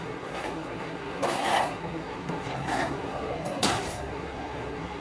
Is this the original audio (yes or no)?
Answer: no